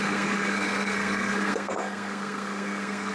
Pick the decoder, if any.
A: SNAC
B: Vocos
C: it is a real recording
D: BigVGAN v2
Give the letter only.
A